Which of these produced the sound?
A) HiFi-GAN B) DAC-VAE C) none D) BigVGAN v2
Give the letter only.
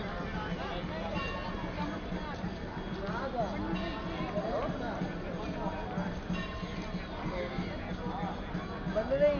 C